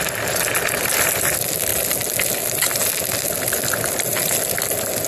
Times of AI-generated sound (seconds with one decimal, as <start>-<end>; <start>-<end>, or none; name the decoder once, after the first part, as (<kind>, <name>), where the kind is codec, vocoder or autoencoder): none